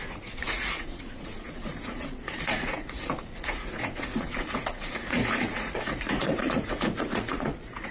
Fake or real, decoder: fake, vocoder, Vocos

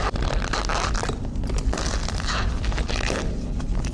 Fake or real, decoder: real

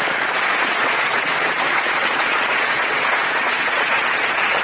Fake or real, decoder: fake, vocoder, Vocos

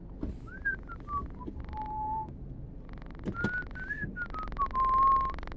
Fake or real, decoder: real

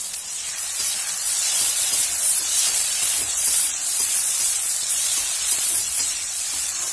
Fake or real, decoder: fake, vocoder, Vocos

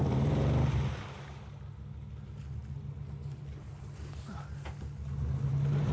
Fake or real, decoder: real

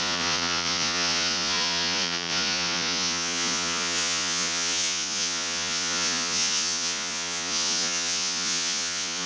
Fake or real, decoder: fake, vocoder, Vocos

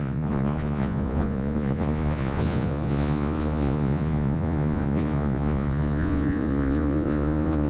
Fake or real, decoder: fake, vocoder, Vocos